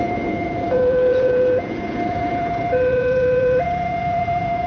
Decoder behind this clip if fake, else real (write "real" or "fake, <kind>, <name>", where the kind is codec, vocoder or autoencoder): fake, vocoder, Vocos